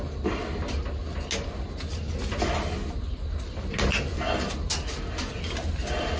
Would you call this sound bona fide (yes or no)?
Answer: yes